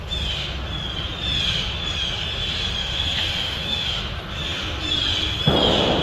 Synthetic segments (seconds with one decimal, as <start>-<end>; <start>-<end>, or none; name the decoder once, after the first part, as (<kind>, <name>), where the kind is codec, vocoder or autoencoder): 2.8-4.0 (autoencoder, DAC-VAE)